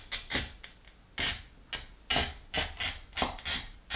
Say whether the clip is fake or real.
real